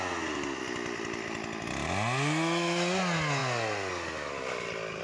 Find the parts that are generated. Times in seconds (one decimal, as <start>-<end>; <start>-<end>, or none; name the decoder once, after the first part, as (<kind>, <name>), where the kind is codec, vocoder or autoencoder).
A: none